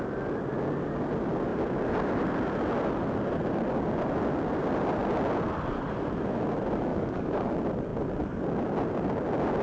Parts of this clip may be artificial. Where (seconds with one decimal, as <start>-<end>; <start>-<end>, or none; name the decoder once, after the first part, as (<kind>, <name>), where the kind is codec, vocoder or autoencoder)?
6.9-7.5 (codec, DAC)